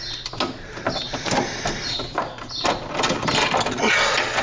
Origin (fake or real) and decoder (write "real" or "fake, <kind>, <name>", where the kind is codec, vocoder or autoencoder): real